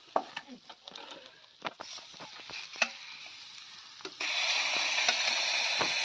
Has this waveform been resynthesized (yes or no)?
no